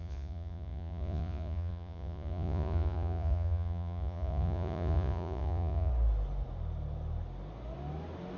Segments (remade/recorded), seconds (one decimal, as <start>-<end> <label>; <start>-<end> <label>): 0.0-5.9 remade; 5.9-8.4 recorded